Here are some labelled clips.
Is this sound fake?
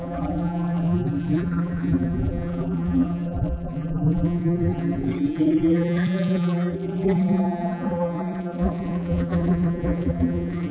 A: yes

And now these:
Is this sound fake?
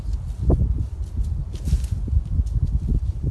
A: no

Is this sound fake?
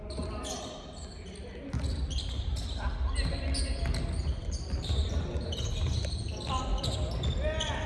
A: no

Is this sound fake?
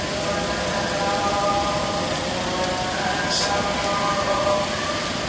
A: no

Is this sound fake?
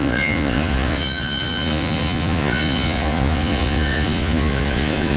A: yes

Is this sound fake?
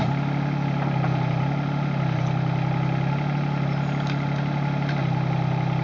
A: no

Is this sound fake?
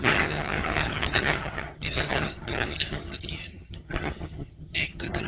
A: yes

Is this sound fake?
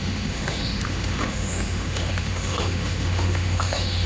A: yes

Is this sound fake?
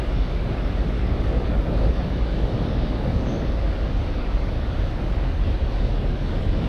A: yes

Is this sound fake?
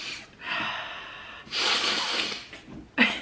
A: no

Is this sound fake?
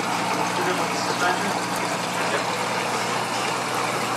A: no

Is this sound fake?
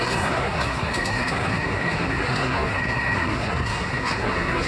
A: yes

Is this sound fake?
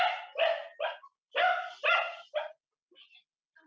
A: no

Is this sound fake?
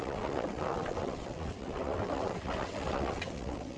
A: yes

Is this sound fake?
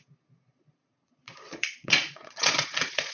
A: yes